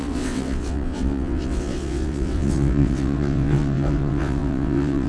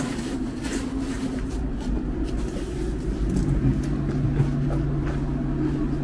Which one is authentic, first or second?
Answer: second